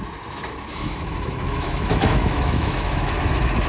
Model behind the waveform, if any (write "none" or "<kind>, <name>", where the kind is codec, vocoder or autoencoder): autoencoder, DAC-VAE